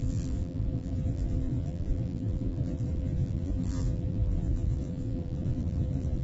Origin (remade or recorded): remade